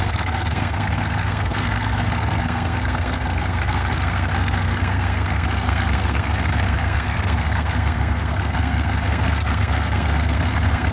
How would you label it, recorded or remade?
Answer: remade